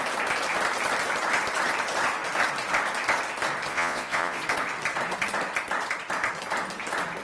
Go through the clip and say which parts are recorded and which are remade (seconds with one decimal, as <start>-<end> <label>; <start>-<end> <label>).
0.0-3.7 recorded; 3.7-4.4 remade; 4.4-7.2 recorded